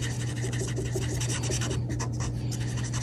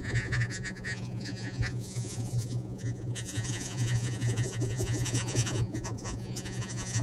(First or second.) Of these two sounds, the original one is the first